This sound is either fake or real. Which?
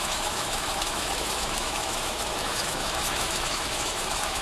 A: fake